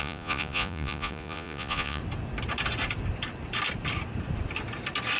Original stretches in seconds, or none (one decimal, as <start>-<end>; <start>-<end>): 2.0-5.2